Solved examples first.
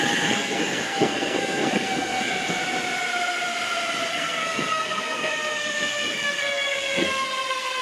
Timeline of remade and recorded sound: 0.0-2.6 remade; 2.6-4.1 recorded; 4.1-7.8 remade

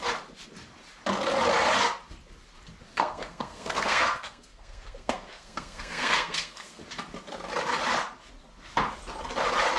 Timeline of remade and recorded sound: 0.0-2.9 recorded; 2.9-6.8 remade; 6.8-9.8 recorded

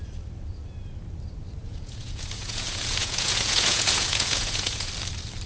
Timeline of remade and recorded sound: 0.0-1.6 recorded; 1.6-4.9 remade; 4.9-5.5 recorded

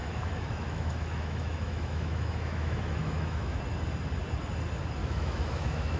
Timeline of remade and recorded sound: 0.0-3.6 remade; 3.6-5.0 recorded; 5.0-6.0 remade

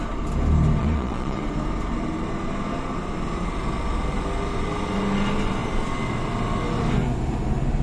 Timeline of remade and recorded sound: 0.0-0.8 recorded; 0.8-1.4 remade; 1.4-7.8 recorded

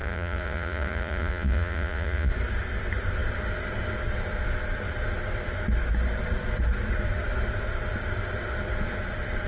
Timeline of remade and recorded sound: 0.0-2.3 remade; 2.3-9.5 recorded

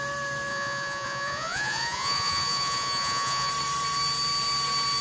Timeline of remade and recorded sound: 0.0-0.5 recorded; 0.5-3.5 remade; 3.5-5.0 recorded